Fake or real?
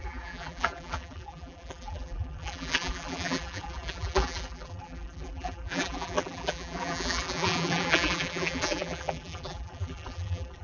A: fake